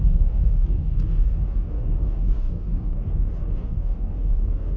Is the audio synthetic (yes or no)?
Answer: yes